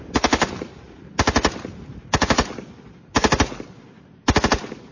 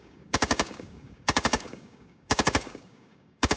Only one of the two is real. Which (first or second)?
first